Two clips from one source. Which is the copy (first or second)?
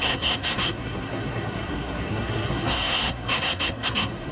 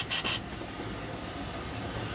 first